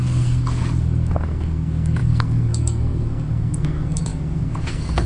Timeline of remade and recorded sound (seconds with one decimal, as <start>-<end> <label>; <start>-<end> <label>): 0.0-5.1 remade